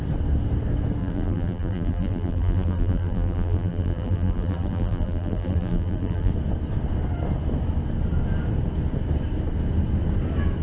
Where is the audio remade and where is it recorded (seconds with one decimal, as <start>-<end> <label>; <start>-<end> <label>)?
0.0-1.0 recorded; 1.0-6.3 remade; 6.3-10.6 recorded

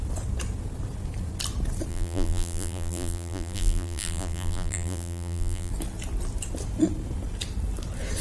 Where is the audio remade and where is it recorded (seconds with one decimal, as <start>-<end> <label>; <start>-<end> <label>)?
0.0-1.9 recorded; 1.9-5.7 remade; 5.7-8.2 recorded

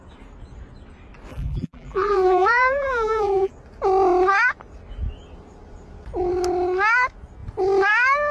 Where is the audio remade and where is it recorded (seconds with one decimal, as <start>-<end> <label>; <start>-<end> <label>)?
0.0-1.3 recorded; 1.3-3.5 remade; 3.5-8.3 recorded